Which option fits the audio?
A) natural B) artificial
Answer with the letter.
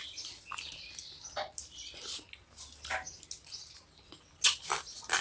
A